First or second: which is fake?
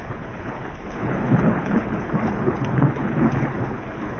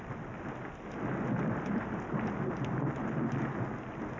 first